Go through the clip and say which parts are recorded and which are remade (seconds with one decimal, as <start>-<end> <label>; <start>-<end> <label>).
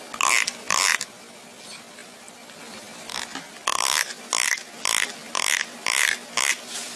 0.0-7.0 recorded